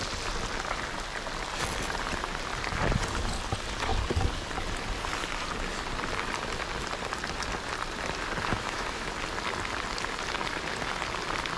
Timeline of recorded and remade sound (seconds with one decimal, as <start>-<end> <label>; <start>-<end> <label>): 0.0-8.5 recorded; 8.5-9.1 remade; 9.1-11.6 recorded